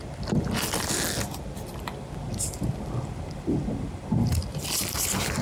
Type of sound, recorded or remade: recorded